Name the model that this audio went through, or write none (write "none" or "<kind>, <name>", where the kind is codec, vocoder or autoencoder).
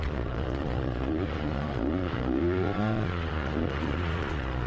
vocoder, Vocos